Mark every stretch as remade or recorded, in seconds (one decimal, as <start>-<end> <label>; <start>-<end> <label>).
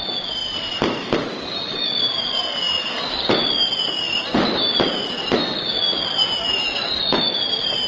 0.0-7.9 recorded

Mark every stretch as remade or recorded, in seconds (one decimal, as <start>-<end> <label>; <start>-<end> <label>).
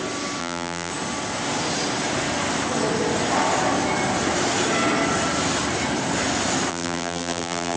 0.0-0.4 recorded; 0.4-0.9 remade; 0.9-6.7 recorded; 6.7-7.8 remade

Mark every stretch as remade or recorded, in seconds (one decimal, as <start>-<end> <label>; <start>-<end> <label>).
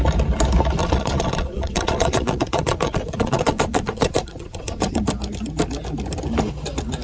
0.0-0.8 recorded; 0.8-5.0 remade; 5.0-7.0 recorded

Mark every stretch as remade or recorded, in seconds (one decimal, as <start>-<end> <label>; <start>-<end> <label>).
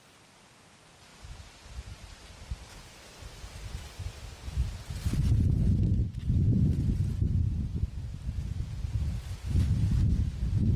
0.0-10.8 recorded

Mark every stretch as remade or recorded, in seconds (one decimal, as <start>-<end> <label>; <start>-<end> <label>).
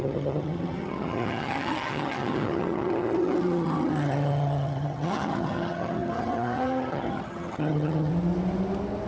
0.0-8.1 remade; 8.1-9.1 recorded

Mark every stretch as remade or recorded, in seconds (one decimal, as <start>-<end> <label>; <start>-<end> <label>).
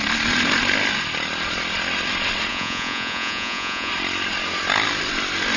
0.0-2.5 recorded; 2.5-3.9 remade; 3.9-5.6 recorded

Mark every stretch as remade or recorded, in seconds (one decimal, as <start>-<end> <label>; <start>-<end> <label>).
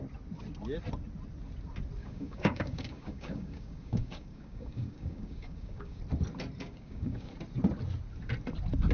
0.0-2.0 recorded; 2.0-6.0 remade; 6.0-6.6 recorded; 6.6-7.3 remade; 7.3-8.9 recorded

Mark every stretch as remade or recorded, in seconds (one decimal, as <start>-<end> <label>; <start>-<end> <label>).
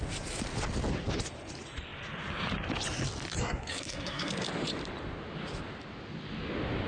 0.0-3.4 recorded; 3.4-4.3 remade; 4.3-6.9 recorded